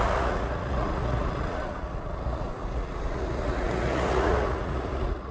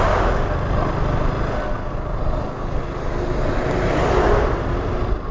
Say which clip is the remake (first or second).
first